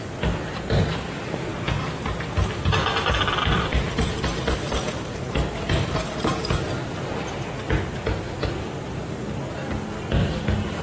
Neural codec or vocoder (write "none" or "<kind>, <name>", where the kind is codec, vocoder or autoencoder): none